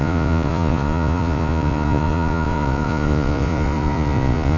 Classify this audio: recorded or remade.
remade